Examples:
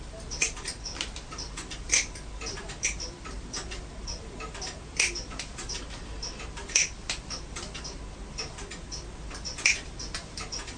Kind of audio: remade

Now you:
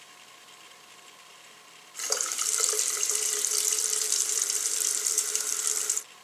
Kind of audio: remade